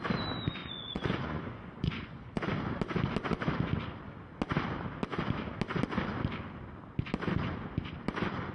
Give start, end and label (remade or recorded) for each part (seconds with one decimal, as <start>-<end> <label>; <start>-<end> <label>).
0.0-0.6 recorded; 0.6-2.4 remade; 2.4-8.5 recorded